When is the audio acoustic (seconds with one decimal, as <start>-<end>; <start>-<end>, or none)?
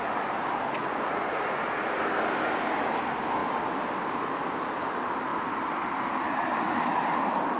0.0-0.8; 1.6-7.6